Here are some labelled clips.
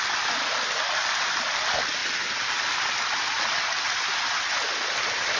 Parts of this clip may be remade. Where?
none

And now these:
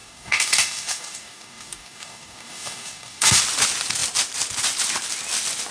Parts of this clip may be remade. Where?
0.0-3.4 (codec, DAC)

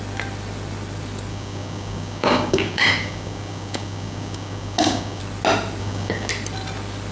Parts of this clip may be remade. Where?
1.3-5.2 (codec, DAC); 5.8-6.3

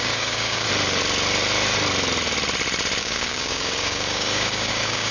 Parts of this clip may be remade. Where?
0.0-0.7 (codec, DAC); 3.0-5.1

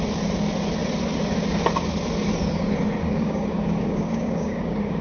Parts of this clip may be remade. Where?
3.0-5.0 (codec, DAC)

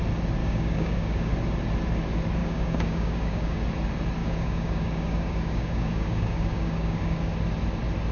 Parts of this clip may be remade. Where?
0.4-1.3 (codec, DAC); 2.4-3.6; 4.2-7.2

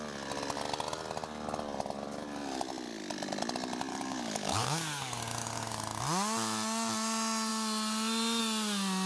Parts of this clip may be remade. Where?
3.9-6.0 (codec, DAC)

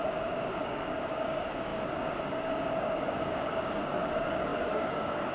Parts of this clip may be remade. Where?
0.0-5.3 (codec, DAC)